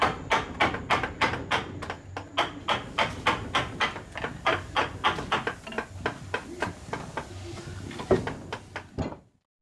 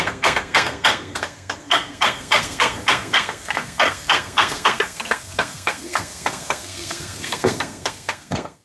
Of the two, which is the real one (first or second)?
first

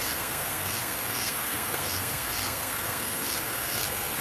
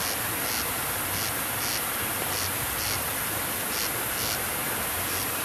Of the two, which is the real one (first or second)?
second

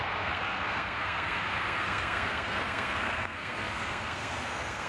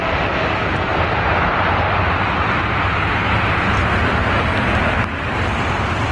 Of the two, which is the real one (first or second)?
second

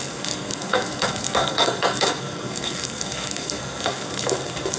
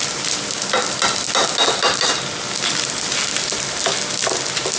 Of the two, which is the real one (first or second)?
second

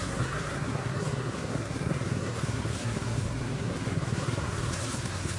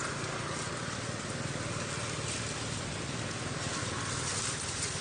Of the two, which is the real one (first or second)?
second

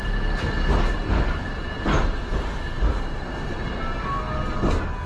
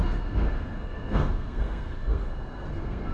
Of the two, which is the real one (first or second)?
first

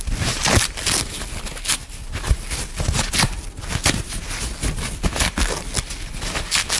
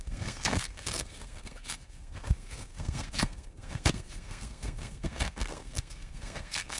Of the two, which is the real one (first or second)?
first